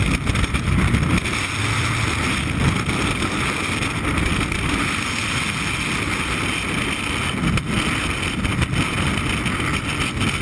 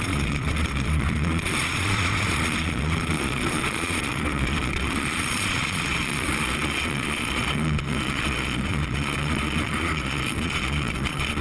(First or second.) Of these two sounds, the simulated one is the second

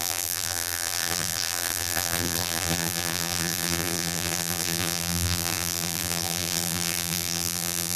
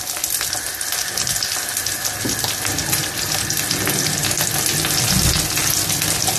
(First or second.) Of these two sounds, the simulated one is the first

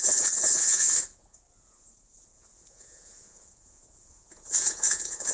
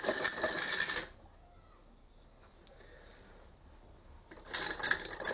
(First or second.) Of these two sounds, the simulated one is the first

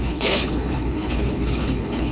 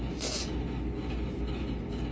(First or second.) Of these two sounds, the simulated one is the first